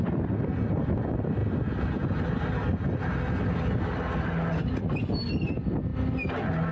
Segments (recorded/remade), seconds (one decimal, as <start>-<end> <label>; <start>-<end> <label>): 0.0-6.7 recorded